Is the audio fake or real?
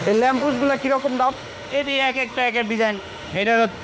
fake